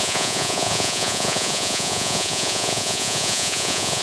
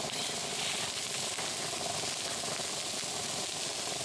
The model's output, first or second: first